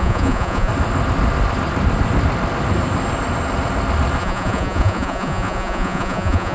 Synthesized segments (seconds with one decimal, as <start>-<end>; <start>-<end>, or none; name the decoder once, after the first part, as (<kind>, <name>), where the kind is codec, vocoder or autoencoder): 0.0-0.7 (vocoder, Vocos); 4.2-6.5